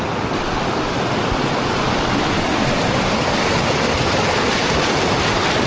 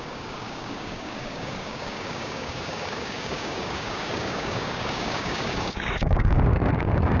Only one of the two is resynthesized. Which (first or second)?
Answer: second